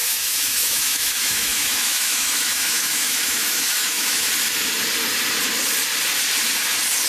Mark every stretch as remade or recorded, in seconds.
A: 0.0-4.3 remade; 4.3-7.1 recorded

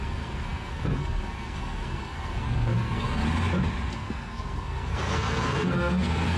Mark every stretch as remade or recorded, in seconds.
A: 0.0-3.2 remade; 3.2-3.9 recorded; 3.9-6.4 remade

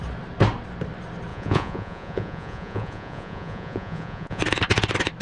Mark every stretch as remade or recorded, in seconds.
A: 0.0-1.3 recorded; 1.3-4.4 remade; 4.4-5.2 recorded

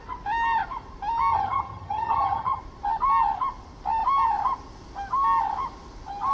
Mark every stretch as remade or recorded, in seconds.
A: 0.0-1.3 recorded; 1.3-2.6 remade; 2.6-6.3 recorded

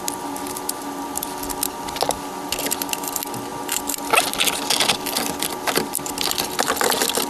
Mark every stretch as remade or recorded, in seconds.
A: 0.0-7.3 recorded